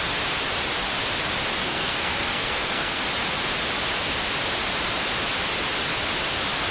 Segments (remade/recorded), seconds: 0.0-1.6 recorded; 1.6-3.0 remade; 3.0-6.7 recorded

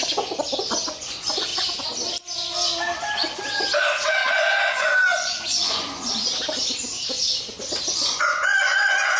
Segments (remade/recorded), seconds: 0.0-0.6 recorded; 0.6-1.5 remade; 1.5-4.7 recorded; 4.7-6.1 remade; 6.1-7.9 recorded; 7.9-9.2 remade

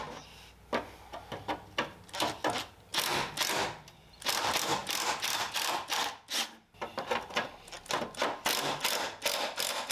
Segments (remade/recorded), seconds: 0.0-4.8 recorded; 4.8-5.6 remade; 5.6-9.9 recorded

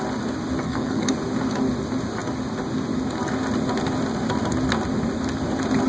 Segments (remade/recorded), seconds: 0.0-0.6 recorded; 0.6-1.1 remade; 1.1-5.9 recorded